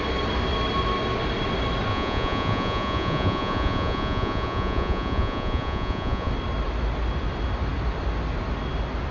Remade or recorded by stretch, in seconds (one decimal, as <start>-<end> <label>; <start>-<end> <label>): 0.0-1.9 recorded; 1.9-6.3 remade; 6.3-9.1 recorded